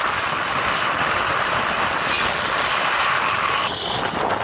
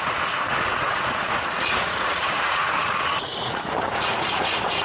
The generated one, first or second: second